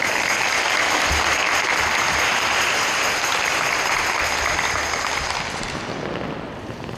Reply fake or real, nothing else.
real